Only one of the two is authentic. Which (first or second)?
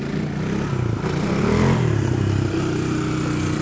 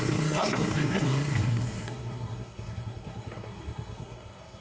first